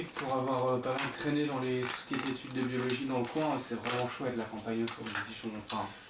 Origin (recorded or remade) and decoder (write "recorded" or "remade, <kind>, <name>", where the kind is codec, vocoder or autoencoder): recorded